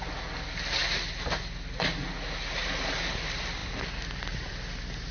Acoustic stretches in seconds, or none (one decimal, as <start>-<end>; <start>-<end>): 0.0-5.1